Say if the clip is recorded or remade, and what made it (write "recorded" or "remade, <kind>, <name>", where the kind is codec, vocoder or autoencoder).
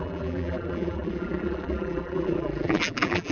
remade, vocoder, BigVGAN v2